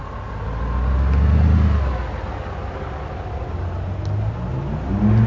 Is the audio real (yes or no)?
yes